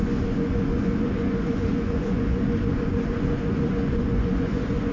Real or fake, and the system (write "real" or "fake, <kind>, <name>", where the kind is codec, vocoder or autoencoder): fake, vocoder, Vocos